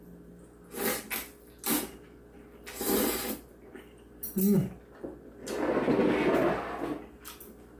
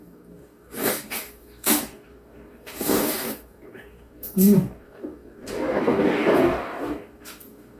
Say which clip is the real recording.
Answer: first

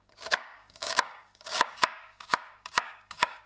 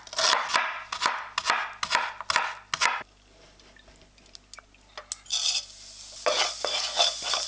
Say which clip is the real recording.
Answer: second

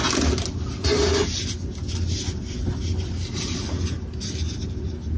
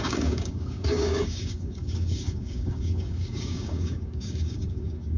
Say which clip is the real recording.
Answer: first